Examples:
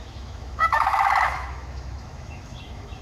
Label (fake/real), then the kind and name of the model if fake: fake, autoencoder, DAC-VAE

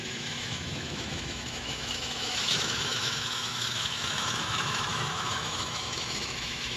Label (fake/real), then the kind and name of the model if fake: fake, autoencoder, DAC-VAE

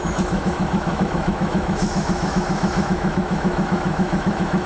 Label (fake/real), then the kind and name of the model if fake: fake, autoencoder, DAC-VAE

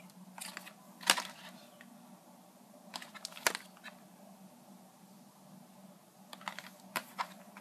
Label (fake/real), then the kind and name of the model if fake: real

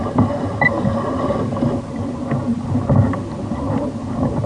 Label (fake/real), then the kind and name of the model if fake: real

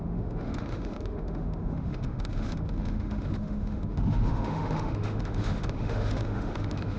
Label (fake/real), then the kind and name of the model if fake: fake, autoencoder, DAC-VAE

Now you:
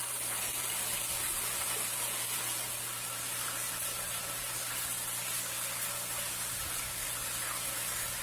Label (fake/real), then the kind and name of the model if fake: real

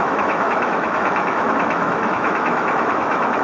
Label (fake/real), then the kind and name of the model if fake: fake, autoencoder, DAC-VAE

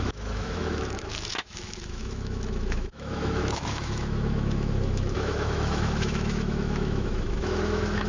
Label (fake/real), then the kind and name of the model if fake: fake, autoencoder, DAC-VAE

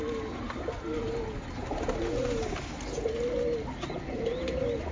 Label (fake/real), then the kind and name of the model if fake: real